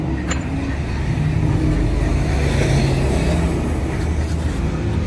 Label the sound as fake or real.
real